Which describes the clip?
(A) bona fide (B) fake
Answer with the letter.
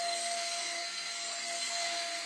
B